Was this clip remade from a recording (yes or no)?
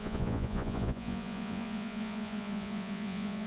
yes